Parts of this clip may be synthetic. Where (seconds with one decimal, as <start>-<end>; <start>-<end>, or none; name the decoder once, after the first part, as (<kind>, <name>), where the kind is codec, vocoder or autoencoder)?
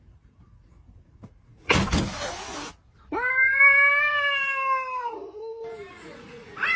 0.0-1.8 (vocoder, Vocos); 5.9-6.8